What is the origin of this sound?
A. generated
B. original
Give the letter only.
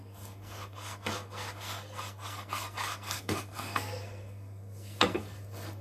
A